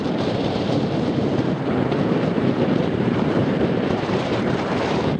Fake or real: fake